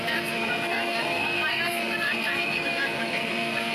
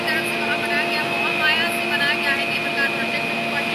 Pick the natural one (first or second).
second